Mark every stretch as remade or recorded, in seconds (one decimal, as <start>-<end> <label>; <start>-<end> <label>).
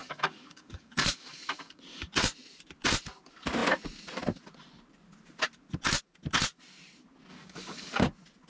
0.0-1.8 remade; 1.8-7.3 recorded; 7.3-8.0 remade; 8.0-8.5 recorded